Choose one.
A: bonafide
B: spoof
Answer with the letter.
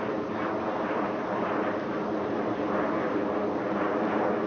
A